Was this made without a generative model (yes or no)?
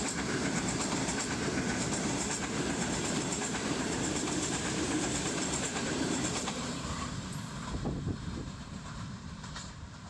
no